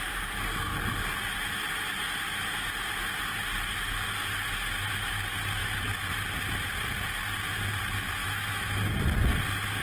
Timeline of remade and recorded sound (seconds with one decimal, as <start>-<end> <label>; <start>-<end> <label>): 0.0-5.6 recorded; 5.6-6.1 remade; 6.1-8.2 recorded; 8.2-8.9 remade; 8.9-9.8 recorded

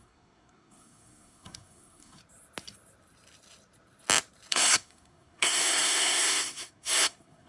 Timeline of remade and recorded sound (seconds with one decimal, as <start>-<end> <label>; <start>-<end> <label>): 0.0-2.2 remade; 2.2-4.5 recorded; 4.5-7.5 remade

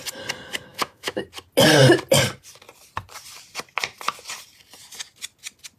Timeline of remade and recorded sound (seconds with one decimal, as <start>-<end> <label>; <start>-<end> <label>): 0.0-0.7 recorded; 0.7-1.2 remade; 1.2-5.8 recorded

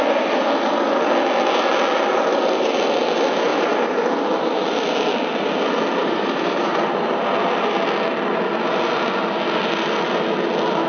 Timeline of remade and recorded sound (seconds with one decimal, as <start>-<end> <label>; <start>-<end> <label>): 0.0-3.5 recorded; 3.5-4.1 remade; 4.1-6.0 recorded; 6.0-7.0 remade; 7.0-10.9 recorded

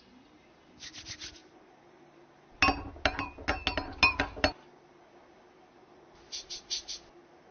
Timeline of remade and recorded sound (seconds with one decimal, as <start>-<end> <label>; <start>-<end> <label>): 0.0-7.5 recorded

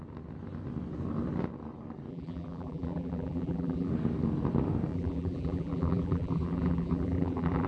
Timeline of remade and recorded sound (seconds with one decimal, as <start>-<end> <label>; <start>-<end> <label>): 0.0-2.1 recorded; 2.1-3.9 remade; 3.9-4.9 recorded; 4.9-7.7 remade